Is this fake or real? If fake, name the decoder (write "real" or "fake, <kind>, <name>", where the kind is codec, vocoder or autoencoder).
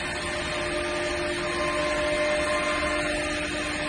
real